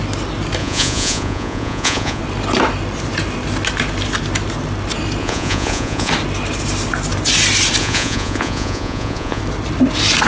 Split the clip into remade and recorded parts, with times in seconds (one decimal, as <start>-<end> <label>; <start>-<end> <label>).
0.0-0.6 recorded; 0.6-2.2 remade; 2.2-5.2 recorded; 5.2-6.1 remade; 6.1-7.8 recorded; 7.8-9.4 remade; 9.4-10.3 recorded